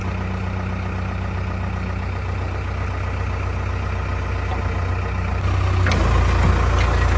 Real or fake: real